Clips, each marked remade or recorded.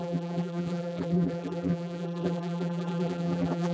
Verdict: remade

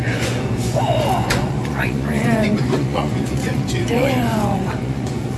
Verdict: remade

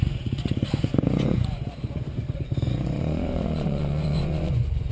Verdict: remade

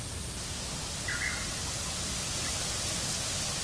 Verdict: recorded